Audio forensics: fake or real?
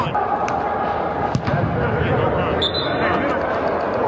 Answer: real